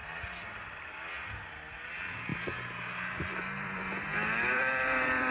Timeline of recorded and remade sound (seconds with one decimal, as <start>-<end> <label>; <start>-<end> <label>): 0.0-1.9 recorded; 1.9-2.3 remade; 2.3-3.2 recorded; 3.2-5.3 remade